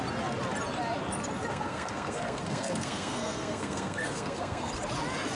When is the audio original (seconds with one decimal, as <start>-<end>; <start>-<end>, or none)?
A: 0.0-1.5; 4.7-5.3